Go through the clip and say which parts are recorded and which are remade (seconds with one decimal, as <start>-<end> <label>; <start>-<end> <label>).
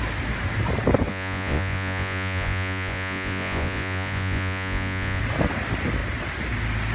0.0-1.1 recorded; 1.1-5.2 remade; 5.2-6.9 recorded